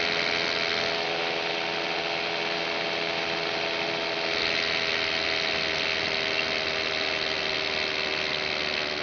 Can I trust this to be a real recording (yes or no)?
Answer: yes